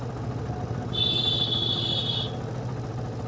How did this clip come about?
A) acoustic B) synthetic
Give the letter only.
A